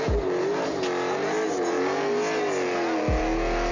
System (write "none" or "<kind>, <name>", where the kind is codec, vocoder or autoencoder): none